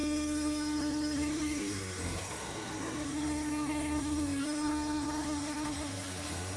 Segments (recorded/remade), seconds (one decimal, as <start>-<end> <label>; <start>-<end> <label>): 0.0-6.6 remade